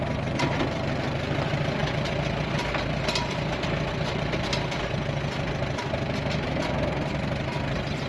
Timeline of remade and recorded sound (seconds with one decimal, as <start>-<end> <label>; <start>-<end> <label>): 0.0-8.1 recorded